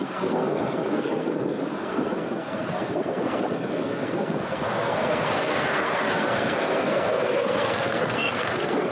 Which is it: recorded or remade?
remade